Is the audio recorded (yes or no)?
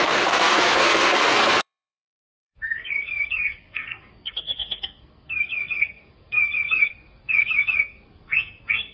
no